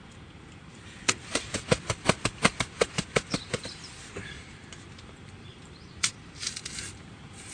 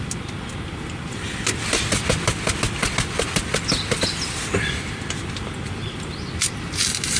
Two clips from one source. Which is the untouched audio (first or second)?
second